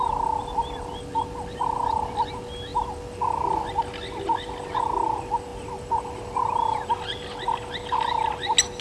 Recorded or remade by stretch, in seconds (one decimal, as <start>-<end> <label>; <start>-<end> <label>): 0.0-8.8 recorded